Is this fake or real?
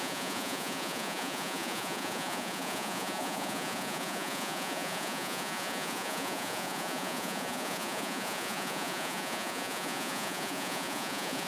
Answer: fake